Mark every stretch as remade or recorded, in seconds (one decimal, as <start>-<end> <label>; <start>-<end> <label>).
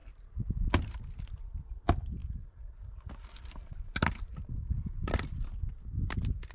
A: 0.0-6.5 recorded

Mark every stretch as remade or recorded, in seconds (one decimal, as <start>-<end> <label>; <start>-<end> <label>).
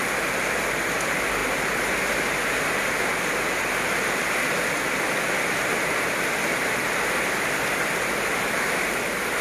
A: 0.0-9.4 recorded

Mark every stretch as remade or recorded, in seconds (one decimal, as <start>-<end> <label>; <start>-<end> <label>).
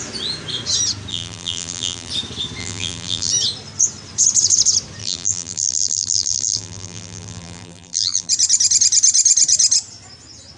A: 0.0-1.1 recorded; 1.1-2.1 remade; 2.1-2.6 recorded; 2.6-3.3 remade; 3.3-5.0 recorded; 5.0-8.3 remade; 8.3-10.6 recorded